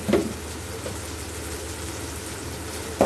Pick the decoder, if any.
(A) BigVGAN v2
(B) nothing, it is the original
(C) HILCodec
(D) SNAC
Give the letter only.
B